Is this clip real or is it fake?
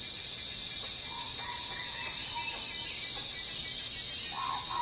real